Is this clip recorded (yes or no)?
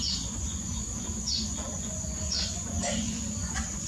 no